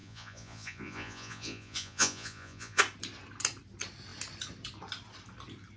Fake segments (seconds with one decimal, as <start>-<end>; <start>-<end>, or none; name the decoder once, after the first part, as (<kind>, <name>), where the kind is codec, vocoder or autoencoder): 0.0-2.8 (vocoder, Vocos)